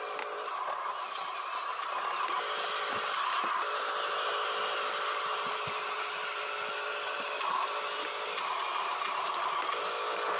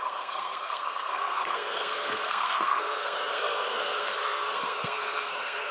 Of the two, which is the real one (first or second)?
first